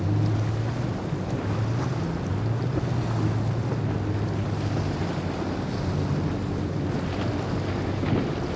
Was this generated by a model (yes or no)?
no